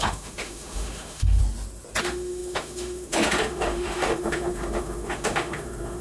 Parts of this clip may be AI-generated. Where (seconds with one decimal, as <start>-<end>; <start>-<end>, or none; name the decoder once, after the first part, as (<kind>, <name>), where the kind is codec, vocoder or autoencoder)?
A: 0.0-1.4 (autoencoder, DAC-VAE); 2.0-6.0